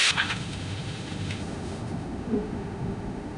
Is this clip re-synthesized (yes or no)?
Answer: yes